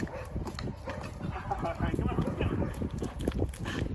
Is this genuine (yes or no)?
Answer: yes